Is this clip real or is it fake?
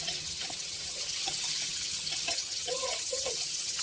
fake